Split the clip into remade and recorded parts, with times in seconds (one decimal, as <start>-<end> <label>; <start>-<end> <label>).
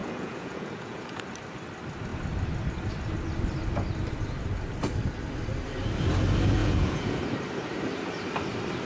0.0-1.2 remade; 1.2-6.6 recorded; 6.6-7.2 remade; 7.2-8.9 recorded